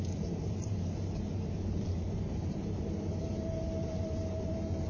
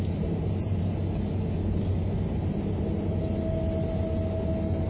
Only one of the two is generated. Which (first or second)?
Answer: first